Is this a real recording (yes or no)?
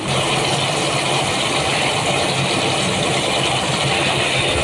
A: yes